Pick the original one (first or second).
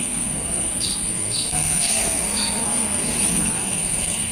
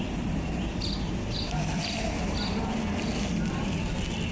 second